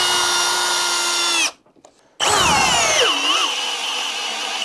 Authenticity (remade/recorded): recorded